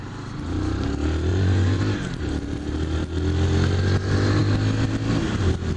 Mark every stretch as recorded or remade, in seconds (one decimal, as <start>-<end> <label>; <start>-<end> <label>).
0.0-1.3 recorded; 1.3-1.8 remade; 1.8-5.8 recorded